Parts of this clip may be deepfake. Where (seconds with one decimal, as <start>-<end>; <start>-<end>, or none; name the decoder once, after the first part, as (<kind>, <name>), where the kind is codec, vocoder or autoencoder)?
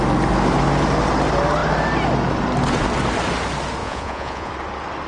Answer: 3.8-4.5 (vocoder, Vocos)